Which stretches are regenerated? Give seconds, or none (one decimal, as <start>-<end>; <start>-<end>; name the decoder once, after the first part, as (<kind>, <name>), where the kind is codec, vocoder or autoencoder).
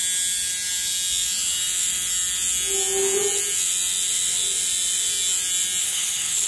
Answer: 5.8-6.5 (codec, HILCodec)